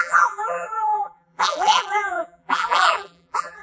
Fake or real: fake